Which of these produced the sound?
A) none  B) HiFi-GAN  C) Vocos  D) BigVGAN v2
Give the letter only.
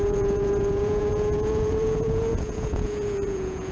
C